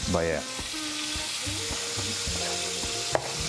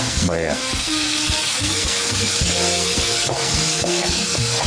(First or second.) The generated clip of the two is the second